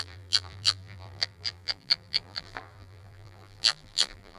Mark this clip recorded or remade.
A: remade